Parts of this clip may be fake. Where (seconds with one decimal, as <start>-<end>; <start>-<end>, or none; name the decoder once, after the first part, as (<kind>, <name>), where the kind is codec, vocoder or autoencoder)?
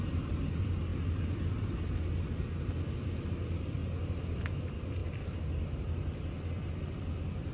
none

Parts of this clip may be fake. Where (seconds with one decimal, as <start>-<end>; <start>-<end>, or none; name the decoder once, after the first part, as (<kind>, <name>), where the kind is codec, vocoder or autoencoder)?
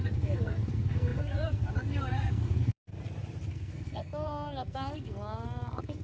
0.0-2.9 (codec, SNAC); 3.5-6.0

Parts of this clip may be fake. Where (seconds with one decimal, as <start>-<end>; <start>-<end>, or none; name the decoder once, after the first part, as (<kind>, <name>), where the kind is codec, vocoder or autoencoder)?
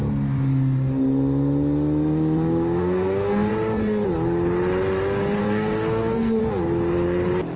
2.8-3.5 (codec, SNAC); 5.4-6.4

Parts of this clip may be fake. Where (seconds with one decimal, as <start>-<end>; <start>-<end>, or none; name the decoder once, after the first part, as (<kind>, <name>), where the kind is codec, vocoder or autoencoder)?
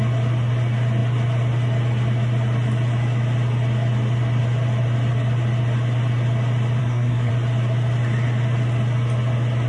6.8-7.3 (codec, SNAC)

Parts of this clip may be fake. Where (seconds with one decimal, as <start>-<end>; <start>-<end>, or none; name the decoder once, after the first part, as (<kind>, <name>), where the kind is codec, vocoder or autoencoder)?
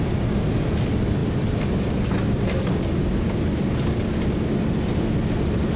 none